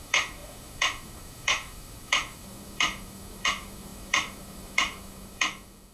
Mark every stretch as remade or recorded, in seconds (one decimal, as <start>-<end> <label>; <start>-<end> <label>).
0.0-5.9 remade